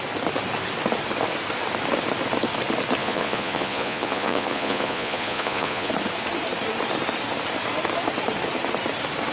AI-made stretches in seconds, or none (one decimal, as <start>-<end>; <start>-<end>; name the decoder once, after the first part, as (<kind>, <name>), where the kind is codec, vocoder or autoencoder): 3.0-5.9 (vocoder, Vocos)